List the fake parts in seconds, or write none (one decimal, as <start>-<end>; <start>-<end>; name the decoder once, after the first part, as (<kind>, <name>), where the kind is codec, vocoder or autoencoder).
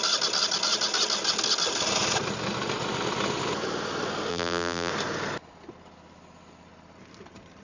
4.3-4.9 (vocoder, BigVGAN v2)